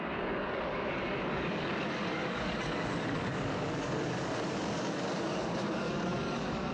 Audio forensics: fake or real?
fake